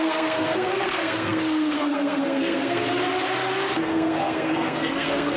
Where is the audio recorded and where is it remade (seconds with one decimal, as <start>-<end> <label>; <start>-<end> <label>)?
0.0-2.8 remade; 2.8-3.7 recorded; 3.7-5.4 remade